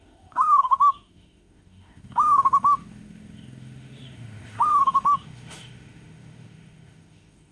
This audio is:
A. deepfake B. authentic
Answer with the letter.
A